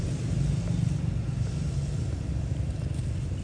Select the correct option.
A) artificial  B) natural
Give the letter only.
B